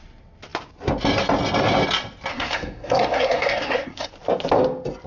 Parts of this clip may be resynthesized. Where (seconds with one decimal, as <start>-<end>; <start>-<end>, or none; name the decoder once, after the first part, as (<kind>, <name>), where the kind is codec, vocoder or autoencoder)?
2.3-4.1 (codec, SNAC)

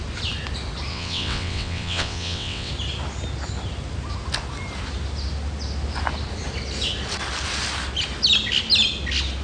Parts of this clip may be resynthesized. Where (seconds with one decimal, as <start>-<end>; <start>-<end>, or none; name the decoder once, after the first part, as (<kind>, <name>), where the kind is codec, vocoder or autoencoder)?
0.9-2.7 (vocoder, WaveNeXt)

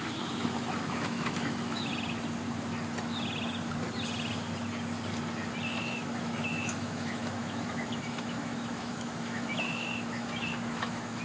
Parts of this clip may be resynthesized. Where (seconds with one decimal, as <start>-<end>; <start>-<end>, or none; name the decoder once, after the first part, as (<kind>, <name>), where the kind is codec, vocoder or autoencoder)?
0.0-1.9 (autoencoder, DAC-VAE); 5.8-11.2

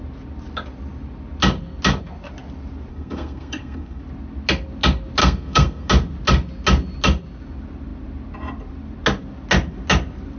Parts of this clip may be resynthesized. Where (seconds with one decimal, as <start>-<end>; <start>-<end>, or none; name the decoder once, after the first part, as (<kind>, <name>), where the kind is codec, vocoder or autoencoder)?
2.9-4.0 (codec, SNAC); 5.2-5.9

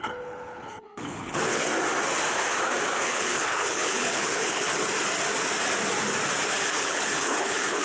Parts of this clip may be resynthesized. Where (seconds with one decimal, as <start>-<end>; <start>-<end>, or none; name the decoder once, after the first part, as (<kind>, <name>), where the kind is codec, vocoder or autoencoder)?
0.0-1.7 (codec, HILCodec); 3.0-4.7; 6.7-7.8

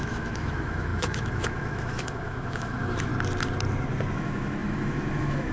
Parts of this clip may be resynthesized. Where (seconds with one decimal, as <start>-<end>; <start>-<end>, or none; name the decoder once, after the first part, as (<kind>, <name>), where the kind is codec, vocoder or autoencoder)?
0.0-3.1 (autoencoder, DAC-VAE); 4.1-5.5

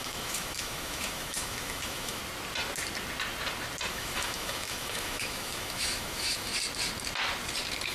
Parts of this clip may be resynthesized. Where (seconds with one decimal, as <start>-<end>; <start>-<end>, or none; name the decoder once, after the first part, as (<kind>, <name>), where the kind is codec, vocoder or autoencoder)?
0.0-2.2 (autoencoder, DAC-VAE); 3.9-6.5

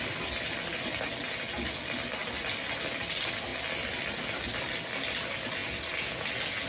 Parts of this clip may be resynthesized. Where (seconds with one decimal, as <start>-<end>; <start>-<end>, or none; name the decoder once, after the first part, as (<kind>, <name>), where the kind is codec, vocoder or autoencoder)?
none